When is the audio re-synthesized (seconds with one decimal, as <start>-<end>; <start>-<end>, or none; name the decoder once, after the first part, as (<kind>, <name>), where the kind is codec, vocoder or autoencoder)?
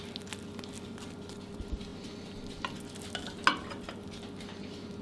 none